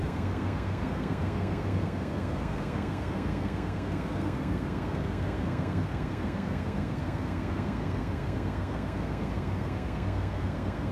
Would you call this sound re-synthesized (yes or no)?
yes